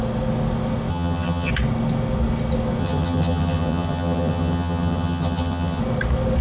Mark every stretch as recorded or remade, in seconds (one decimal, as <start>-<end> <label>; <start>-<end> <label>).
0.0-0.9 recorded; 0.9-1.5 remade; 1.5-2.8 recorded; 2.8-5.8 remade; 5.8-6.4 recorded